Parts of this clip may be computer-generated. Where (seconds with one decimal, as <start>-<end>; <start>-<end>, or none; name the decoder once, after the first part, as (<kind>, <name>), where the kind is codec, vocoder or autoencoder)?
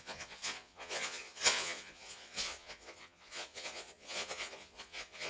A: 0.0-5.3 (vocoder, Vocos)